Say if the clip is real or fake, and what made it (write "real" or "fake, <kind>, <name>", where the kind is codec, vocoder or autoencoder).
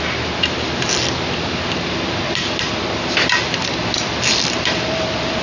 fake, vocoder, BigVGAN v2